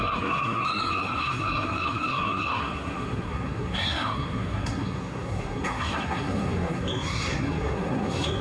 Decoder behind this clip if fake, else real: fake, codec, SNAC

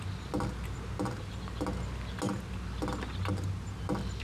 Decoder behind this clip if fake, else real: real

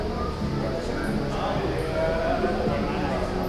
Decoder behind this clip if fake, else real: real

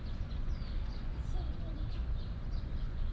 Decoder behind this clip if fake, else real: fake, vocoder, Vocos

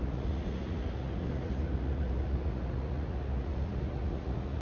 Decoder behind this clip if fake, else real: fake, vocoder, Vocos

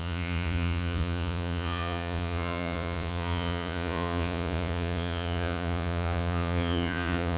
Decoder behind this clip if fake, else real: fake, vocoder, Vocos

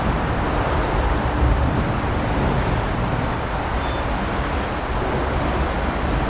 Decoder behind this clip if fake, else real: real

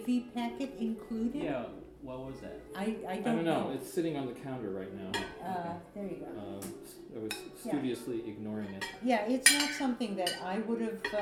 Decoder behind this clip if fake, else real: real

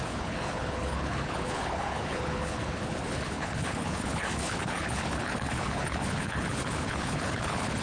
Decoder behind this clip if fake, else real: fake, codec, HILCodec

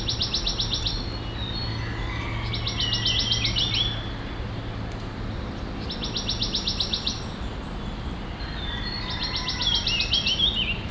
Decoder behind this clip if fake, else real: real